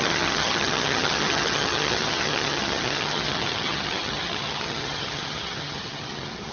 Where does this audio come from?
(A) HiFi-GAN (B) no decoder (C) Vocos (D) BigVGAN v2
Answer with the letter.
A